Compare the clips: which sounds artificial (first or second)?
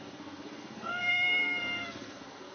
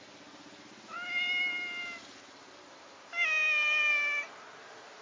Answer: first